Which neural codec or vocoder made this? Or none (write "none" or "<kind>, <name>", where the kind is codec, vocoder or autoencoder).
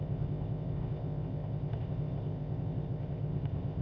codec, ZipCodec